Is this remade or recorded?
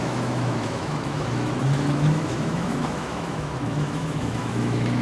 remade